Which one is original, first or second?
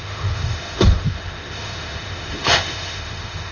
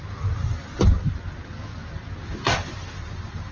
second